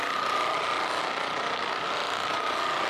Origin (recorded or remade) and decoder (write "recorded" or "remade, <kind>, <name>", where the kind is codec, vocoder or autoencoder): recorded